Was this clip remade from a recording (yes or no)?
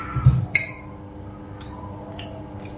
no